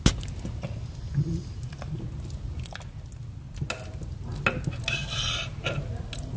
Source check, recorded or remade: recorded